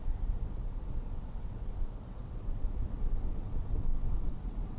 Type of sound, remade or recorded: remade